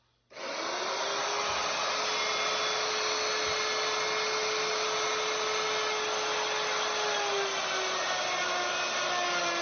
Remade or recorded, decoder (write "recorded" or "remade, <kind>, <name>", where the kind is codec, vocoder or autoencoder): recorded